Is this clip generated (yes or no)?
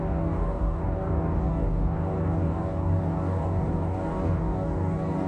yes